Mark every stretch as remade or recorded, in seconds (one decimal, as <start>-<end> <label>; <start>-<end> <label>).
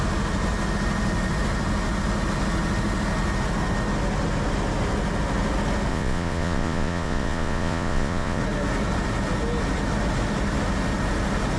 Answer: 0.0-5.9 recorded; 5.9-8.4 remade; 8.4-11.6 recorded